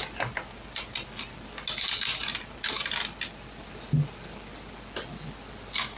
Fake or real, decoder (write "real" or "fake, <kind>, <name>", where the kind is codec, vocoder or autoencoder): real